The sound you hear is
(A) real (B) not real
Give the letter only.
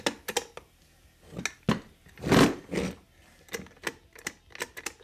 A